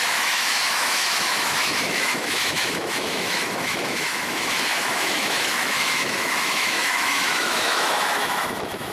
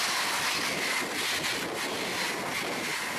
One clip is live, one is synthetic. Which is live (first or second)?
second